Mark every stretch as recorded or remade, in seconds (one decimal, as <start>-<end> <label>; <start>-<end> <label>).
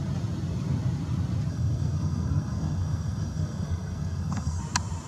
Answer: 0.0-1.5 recorded; 1.5-4.6 remade; 4.6-5.1 recorded